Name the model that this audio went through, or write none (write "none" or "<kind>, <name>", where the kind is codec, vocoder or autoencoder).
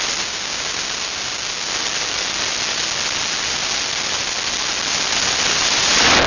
none